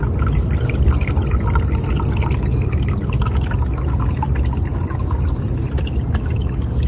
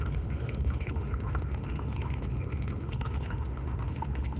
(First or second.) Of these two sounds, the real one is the first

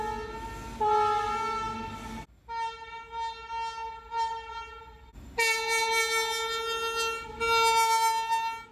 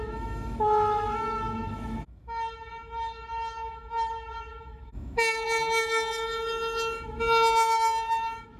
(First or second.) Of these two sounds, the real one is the first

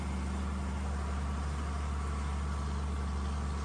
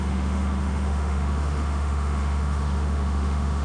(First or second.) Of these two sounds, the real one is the first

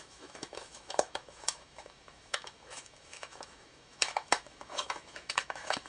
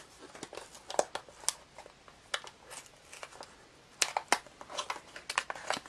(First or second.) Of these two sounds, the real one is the second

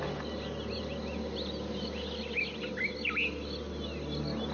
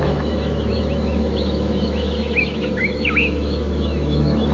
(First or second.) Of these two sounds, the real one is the first